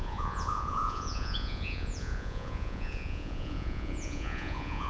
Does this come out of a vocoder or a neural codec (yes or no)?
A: yes